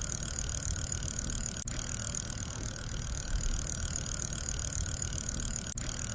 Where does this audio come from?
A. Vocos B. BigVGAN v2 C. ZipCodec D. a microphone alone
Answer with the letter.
D